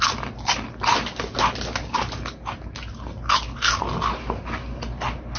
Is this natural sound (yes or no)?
yes